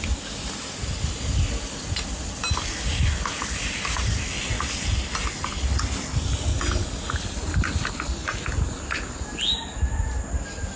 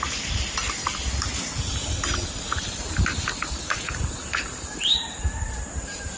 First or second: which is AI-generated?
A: second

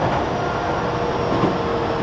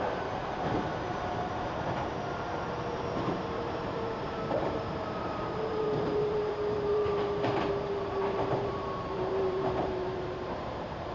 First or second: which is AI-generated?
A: second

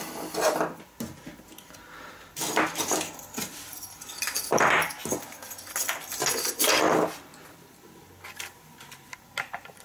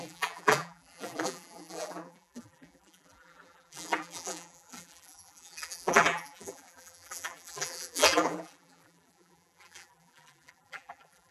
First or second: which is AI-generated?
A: second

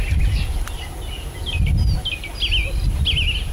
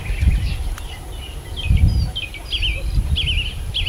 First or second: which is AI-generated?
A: second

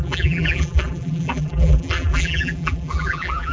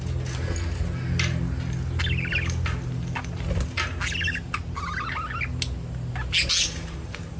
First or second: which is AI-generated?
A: first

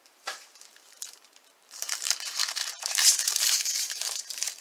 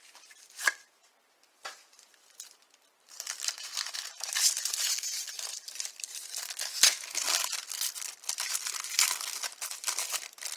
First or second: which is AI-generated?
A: first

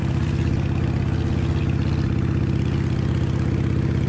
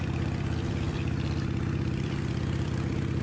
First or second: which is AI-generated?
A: second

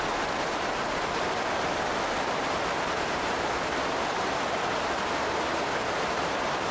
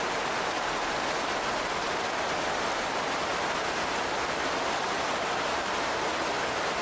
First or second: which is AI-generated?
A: first